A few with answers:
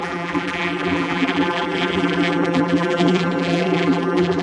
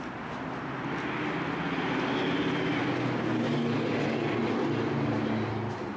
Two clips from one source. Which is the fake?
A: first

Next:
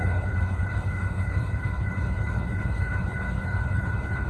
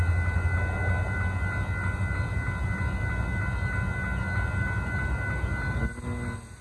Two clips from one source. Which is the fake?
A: first